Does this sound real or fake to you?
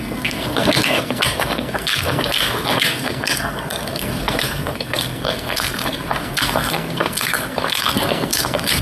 fake